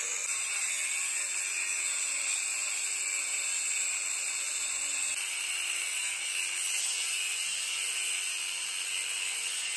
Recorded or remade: recorded